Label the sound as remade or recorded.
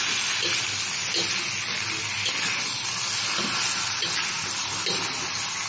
recorded